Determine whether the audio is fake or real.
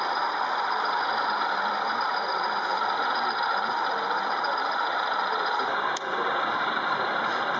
real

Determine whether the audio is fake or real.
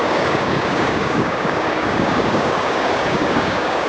fake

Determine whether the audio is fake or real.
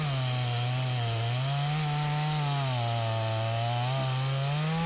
real